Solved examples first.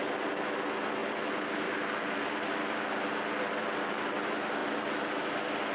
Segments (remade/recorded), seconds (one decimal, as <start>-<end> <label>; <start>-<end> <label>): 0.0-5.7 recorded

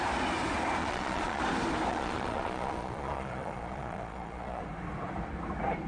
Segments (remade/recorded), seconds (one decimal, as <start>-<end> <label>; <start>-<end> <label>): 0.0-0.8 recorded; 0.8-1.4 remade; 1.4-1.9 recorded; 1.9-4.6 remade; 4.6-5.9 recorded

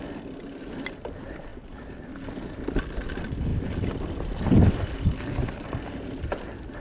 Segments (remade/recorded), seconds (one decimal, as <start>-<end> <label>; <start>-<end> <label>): 0.0-6.8 recorded

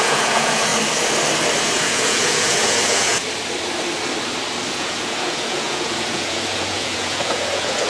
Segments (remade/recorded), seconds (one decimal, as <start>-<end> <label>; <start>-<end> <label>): 0.0-0.7 remade; 0.7-1.6 recorded; 1.6-3.2 remade; 3.2-4.7 recorded; 4.7-7.9 remade

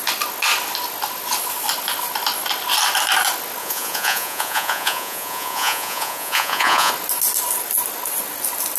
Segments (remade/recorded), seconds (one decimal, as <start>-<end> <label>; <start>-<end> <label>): 0.0-3.6 recorded; 3.6-6.9 remade; 6.9-8.8 recorded